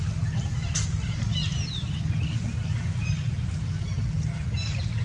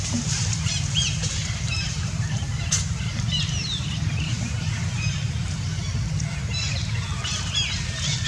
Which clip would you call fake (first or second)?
second